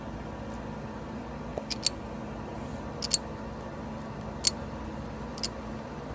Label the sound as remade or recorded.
recorded